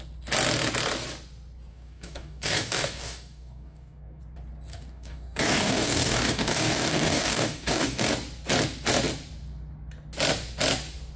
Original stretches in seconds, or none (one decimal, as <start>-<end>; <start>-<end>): 0.0-1.7; 4.2-4.7; 8.1-11.2